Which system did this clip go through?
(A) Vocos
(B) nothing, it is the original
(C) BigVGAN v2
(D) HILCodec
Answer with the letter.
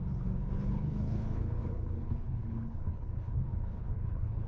D